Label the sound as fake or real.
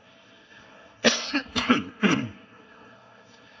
fake